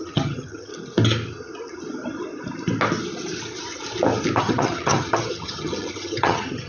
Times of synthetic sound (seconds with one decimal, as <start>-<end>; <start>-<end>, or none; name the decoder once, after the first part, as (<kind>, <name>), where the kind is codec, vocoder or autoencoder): 0.0-0.7 (vocoder, HiFi-GAN); 4.4-6.7